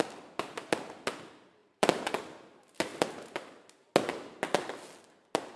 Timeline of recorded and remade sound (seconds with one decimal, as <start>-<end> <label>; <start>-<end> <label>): 0.0-1.6 recorded; 1.6-2.1 remade; 2.1-5.6 recorded